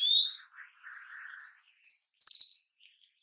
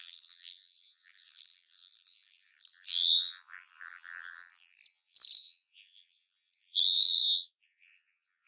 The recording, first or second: first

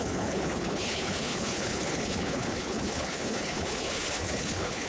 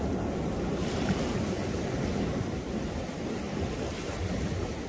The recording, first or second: second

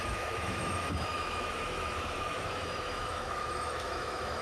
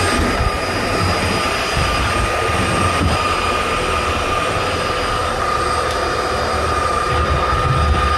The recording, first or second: second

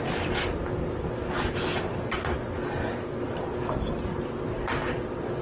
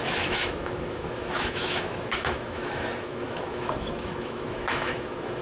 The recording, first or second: first